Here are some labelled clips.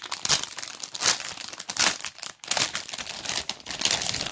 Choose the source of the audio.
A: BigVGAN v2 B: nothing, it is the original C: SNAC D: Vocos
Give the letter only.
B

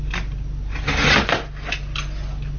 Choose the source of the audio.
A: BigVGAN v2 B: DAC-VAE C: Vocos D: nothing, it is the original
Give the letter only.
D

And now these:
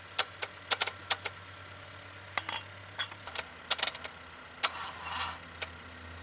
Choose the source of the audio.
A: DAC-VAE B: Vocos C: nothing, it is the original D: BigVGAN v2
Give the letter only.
C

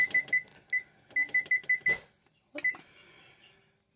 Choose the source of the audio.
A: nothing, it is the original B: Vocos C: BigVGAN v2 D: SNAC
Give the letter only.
A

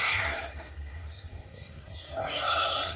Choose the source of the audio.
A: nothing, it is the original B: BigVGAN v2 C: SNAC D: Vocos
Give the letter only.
C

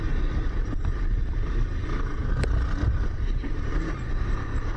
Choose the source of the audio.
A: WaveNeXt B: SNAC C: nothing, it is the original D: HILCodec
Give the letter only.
C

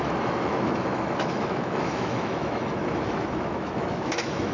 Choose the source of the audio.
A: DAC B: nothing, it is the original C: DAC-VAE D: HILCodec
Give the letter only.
C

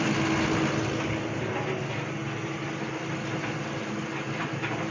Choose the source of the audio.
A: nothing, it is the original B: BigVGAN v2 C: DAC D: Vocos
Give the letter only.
A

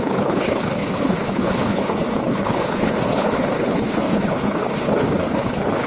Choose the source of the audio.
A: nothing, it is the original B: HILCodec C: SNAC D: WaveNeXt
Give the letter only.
B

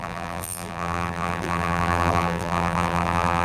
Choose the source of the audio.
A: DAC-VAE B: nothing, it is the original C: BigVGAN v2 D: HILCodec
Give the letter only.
C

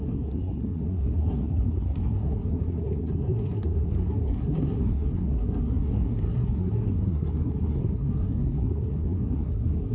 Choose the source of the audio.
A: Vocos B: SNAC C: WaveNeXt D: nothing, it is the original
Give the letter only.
B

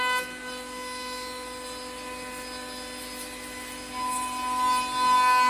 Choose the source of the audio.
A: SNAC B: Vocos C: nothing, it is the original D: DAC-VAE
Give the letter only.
C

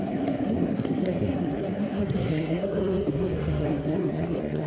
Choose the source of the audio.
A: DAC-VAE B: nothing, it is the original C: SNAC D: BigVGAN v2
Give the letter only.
C